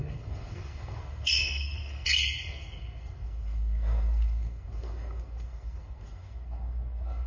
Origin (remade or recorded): remade